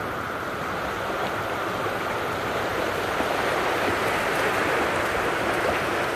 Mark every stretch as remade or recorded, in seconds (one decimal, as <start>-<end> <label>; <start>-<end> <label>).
0.0-6.2 recorded